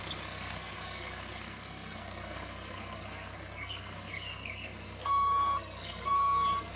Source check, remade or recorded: remade